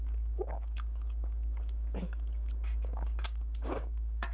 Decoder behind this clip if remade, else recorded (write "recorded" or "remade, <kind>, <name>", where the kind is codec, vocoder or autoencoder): remade, codec, DAC